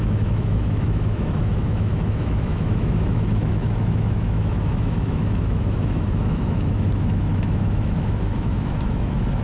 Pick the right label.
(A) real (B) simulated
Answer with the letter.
B